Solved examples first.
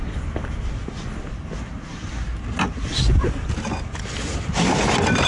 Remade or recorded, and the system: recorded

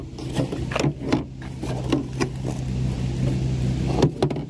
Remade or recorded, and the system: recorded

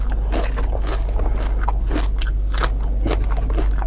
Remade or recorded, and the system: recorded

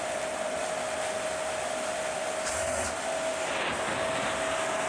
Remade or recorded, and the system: recorded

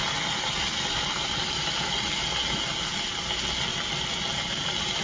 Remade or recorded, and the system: recorded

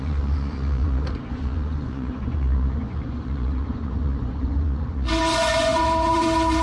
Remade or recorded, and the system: remade, vocoder, Vocos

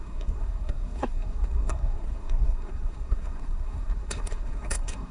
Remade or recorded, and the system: remade, codec, SNAC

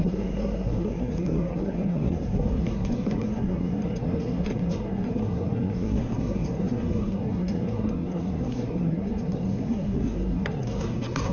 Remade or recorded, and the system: remade, codec, SNAC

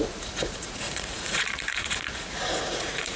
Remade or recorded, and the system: remade, vocoder, Vocos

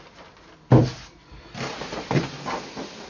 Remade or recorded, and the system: recorded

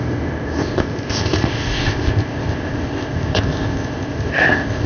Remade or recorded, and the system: remade, codec, ZipCodec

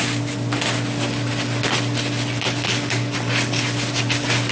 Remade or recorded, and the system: recorded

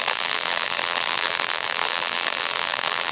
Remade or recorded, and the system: remade, vocoder, BigVGAN v2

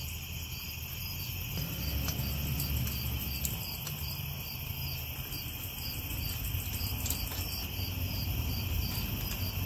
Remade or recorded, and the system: recorded